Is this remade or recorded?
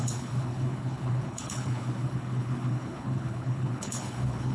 remade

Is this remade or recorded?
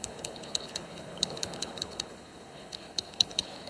remade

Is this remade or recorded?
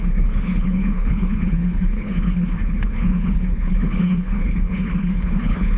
remade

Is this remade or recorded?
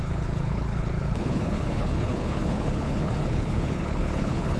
remade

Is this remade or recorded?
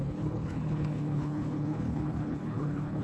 remade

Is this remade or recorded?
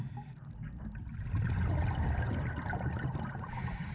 recorded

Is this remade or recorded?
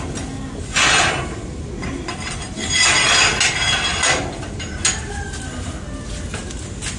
recorded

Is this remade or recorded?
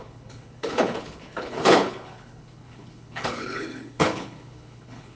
remade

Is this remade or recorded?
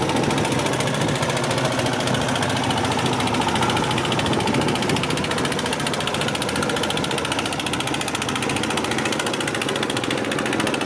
recorded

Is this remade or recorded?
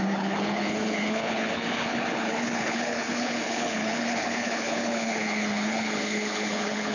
remade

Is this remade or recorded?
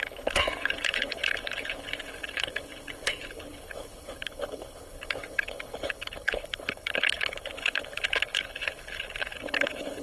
remade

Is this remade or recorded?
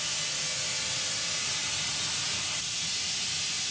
recorded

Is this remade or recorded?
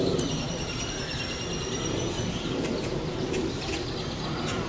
recorded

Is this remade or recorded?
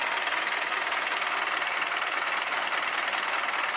recorded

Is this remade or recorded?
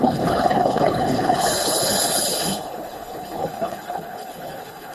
remade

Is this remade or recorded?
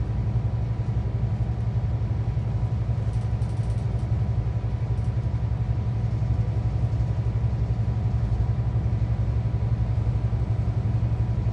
recorded